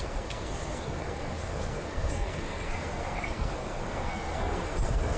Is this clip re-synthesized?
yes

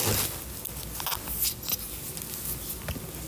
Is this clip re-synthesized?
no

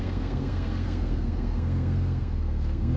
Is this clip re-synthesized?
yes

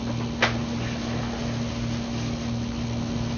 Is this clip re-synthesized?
no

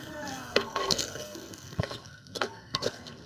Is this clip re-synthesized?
yes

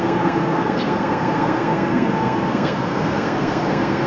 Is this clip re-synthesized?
yes